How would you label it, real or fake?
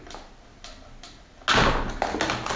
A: real